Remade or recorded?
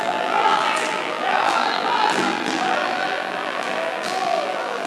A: remade